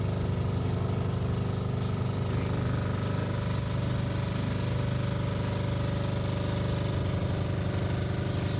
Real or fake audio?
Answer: real